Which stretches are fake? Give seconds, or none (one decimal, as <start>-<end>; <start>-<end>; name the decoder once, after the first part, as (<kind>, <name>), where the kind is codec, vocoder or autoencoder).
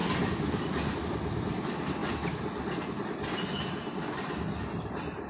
none